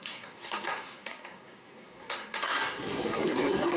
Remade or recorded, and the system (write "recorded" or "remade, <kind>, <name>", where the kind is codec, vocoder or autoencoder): remade, codec, SNAC